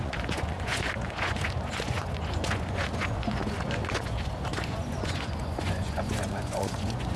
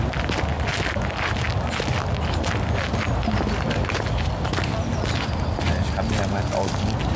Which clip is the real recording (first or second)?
second